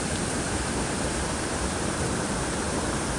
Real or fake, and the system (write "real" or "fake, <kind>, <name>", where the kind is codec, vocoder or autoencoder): fake, vocoder, BigVGAN v2